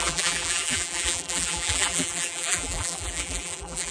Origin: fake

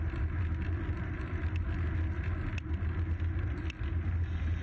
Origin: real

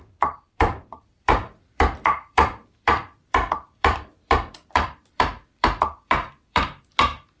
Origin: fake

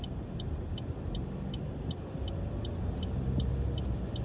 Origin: real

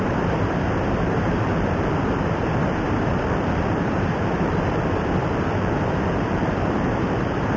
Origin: fake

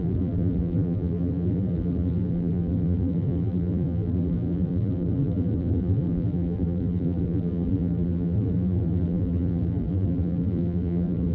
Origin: fake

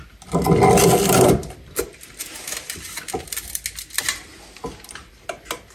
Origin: real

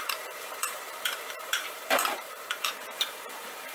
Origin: fake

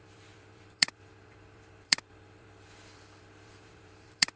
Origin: fake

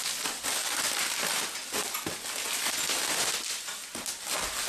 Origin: real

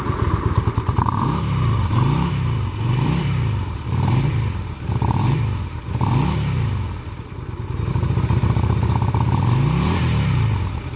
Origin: fake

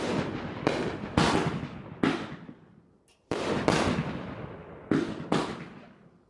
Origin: real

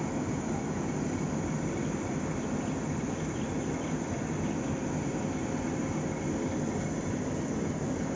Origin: real